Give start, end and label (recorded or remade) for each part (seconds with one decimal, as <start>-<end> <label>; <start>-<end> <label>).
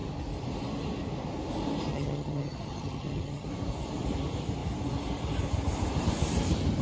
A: 0.0-1.9 recorded; 1.9-3.5 remade; 3.5-6.8 recorded